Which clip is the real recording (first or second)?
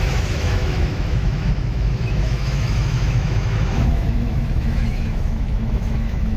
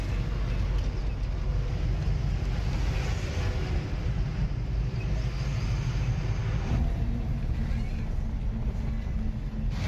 second